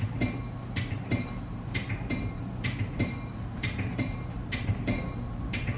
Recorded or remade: remade